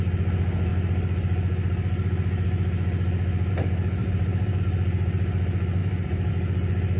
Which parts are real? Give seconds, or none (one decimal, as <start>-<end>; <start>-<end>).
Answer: 0.0-4.0; 4.6-5.8; 6.3-7.0